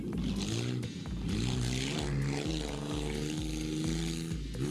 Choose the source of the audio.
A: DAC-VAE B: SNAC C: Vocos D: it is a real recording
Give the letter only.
D